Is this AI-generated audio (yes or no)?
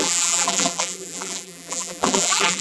yes